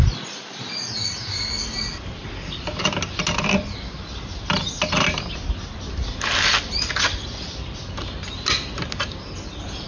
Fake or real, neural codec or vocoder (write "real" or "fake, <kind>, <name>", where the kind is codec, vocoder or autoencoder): real